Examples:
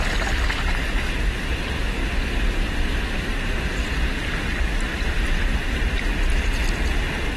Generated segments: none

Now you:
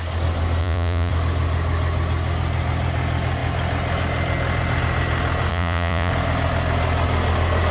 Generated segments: 0.6-1.1 (vocoder, Vocos); 5.5-6.1

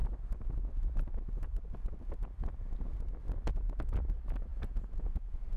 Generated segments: 4.5-5.6 (vocoder, Vocos)

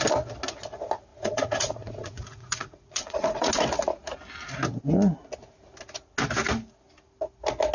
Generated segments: 1.1-3.5 (vocoder, Vocos)

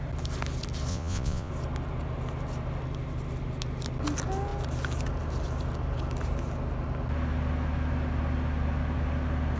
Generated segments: 0.9-1.5 (vocoder, Vocos)

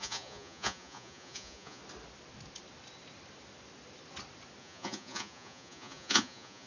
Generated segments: 0.0-1.8 (vocoder, Vocos); 4.6-6.7

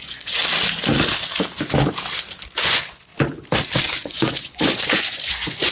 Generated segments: 0.0-0.4 (vocoder, Vocos); 2.6-3.1; 3.8-5.7